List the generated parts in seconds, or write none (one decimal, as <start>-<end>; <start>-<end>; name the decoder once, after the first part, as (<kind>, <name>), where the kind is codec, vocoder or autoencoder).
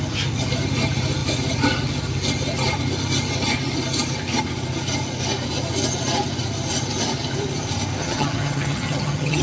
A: 8.0-9.4 (vocoder, HiFi-GAN)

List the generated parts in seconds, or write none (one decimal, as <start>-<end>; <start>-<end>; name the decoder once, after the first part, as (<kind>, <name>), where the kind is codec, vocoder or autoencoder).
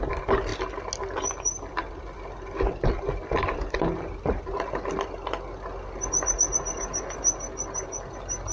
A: none